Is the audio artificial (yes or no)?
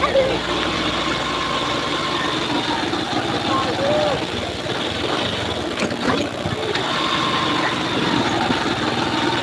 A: no